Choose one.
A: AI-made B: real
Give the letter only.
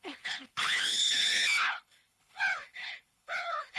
A